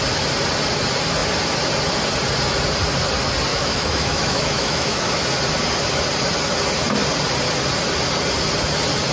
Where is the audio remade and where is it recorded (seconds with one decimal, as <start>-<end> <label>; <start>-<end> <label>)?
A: 0.0-3.5 recorded; 3.5-5.2 remade; 5.2-9.1 recorded